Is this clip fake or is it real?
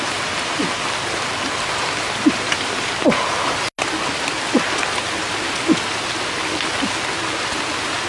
real